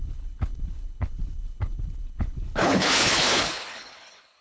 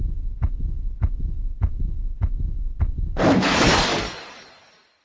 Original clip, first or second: second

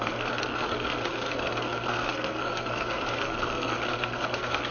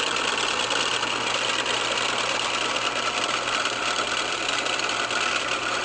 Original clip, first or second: second